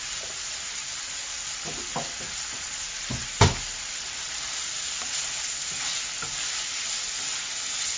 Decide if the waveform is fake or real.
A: real